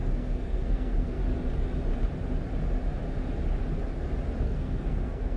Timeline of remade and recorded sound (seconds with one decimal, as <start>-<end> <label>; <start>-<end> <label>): 0.0-1.2 remade; 1.2-4.4 recorded; 4.4-5.4 remade